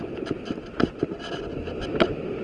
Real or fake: real